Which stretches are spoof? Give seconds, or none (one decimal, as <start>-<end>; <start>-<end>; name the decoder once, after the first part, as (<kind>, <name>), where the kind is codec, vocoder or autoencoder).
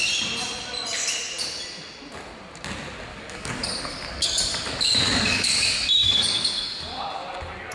3.1-7.0 (codec, DAC)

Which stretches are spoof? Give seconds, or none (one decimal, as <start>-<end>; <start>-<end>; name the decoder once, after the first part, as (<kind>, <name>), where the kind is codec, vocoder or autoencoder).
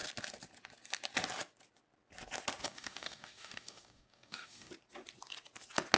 2.6-4.7 (codec, DAC)